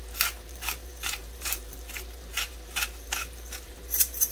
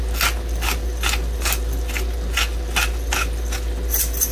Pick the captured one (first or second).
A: second